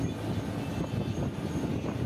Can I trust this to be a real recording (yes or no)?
yes